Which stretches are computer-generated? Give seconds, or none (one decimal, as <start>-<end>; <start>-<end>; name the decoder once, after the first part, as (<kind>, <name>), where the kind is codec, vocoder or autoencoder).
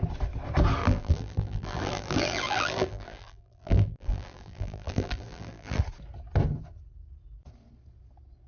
0.8-5.8 (vocoder, BigVGAN v2)